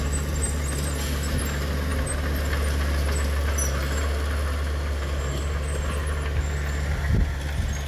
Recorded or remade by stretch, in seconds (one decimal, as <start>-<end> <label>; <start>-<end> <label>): 0.0-7.9 recorded

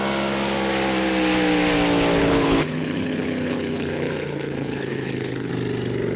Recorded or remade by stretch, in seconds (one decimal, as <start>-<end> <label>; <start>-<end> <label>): 0.0-2.2 recorded; 2.2-5.5 remade; 5.5-6.2 recorded

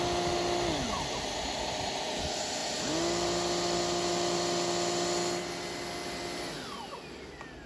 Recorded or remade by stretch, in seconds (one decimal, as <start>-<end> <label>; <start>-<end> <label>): 0.0-7.7 recorded

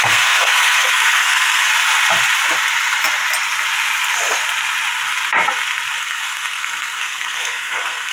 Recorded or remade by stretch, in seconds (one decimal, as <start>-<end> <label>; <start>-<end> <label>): 0.0-1.7 remade; 1.7-6.0 recorded; 6.0-8.1 remade

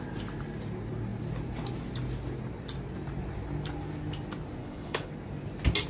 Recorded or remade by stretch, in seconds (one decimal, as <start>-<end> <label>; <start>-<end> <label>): 0.0-4.6 recorded; 4.6-5.1 remade; 5.1-5.9 recorded